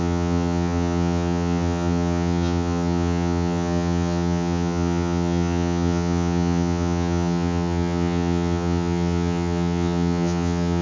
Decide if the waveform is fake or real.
fake